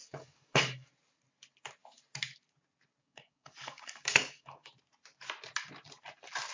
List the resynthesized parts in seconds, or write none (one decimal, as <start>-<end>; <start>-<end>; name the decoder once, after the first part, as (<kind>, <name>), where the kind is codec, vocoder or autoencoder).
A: 0.0-0.9 (codec, DAC); 3.0-4.7